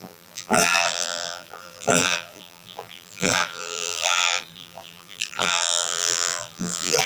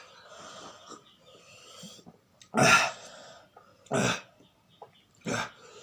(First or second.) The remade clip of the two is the first